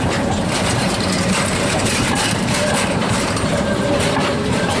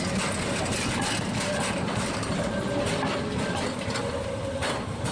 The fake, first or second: first